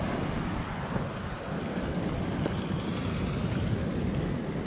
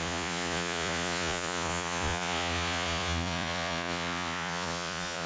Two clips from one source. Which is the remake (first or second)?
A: second